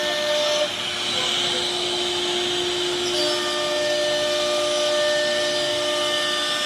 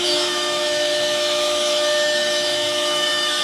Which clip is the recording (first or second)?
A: first